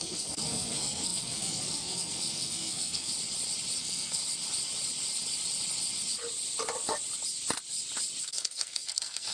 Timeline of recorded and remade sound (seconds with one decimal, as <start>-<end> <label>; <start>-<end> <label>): 0.0-3.1 remade; 3.1-3.8 recorded; 3.8-4.2 remade; 4.2-8.2 recorded; 8.2-9.3 remade